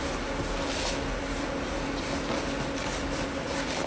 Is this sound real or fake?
real